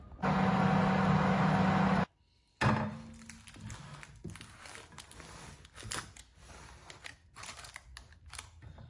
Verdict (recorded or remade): recorded